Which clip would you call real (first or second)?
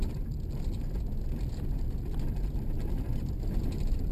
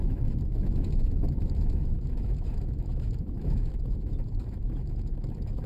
first